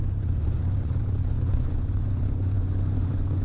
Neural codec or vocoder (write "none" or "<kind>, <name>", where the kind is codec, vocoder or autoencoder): vocoder, Vocos